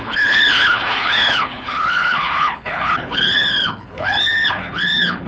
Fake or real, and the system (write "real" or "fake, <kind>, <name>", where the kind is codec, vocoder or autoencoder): fake, codec, HILCodec